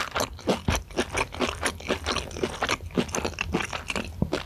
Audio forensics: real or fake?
real